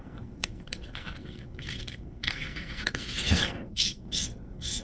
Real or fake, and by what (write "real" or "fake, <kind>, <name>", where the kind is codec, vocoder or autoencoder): fake, codec, SNAC